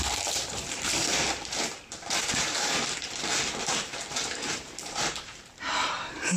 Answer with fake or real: fake